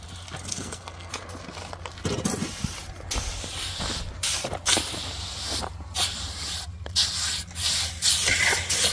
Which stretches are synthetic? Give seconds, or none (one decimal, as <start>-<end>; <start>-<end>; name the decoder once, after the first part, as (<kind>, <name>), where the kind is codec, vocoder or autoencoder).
0.5-1.1 (codec, SNAC)